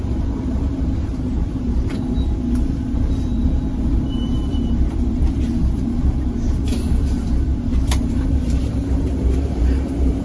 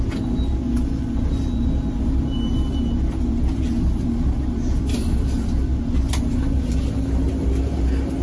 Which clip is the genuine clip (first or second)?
second